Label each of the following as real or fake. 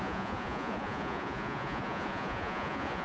fake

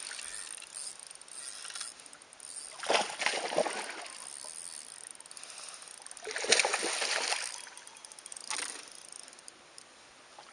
real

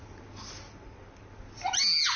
real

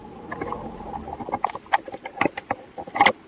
real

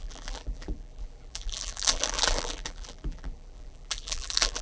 fake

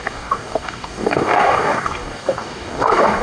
fake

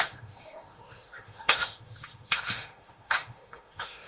fake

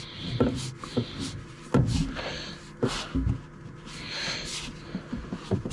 real